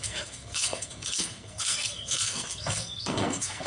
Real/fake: fake